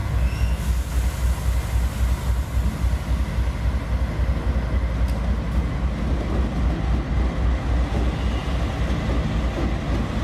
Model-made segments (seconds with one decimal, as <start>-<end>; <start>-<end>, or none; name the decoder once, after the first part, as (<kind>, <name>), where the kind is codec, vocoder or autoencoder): none